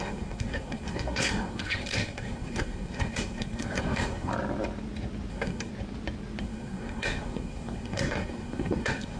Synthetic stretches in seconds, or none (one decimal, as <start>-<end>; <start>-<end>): 0.0-4.3; 5.3-5.7; 6.4-9.2